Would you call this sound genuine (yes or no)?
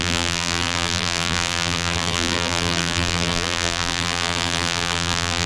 no